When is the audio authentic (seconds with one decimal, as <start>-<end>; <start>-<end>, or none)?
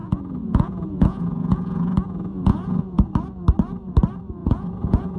3.1-4.4